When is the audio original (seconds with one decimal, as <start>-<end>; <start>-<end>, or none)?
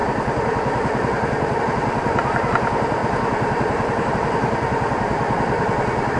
0.0-6.2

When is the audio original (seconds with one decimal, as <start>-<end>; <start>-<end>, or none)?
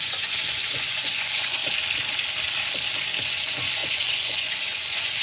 1.6-3.2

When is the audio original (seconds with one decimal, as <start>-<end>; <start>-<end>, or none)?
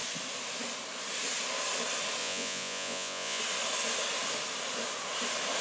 0.0-2.2; 3.4-5.6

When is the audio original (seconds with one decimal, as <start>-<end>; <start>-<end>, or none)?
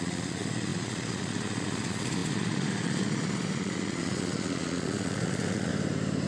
5.7-6.3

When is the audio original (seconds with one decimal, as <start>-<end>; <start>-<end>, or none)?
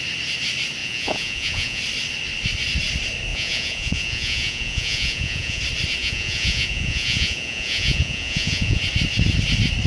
0.0-0.8; 1.8-3.3; 5.6-6.0; 8.8-9.9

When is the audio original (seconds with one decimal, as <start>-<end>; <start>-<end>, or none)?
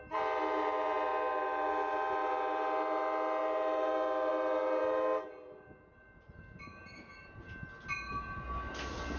0.0-9.2